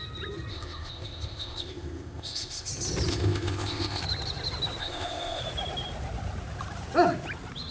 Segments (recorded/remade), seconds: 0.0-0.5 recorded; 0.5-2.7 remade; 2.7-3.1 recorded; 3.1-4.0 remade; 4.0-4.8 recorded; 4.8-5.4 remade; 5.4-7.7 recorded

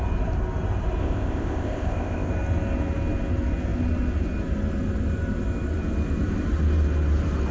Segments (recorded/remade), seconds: 0.0-1.0 recorded; 1.0-2.3 remade; 2.3-7.5 recorded

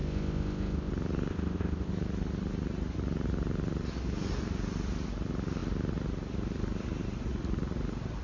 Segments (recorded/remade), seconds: 0.0-0.9 remade; 0.9-1.3 recorded; 1.3-1.9 remade; 1.9-8.2 recorded

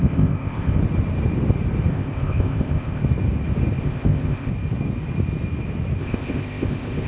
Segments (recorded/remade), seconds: 0.0-0.8 remade; 0.8-1.9 recorded; 1.9-3.0 remade; 3.0-3.8 recorded; 3.8-4.5 remade; 4.5-6.0 recorded; 6.0-7.1 remade